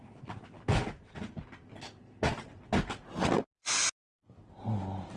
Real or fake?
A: real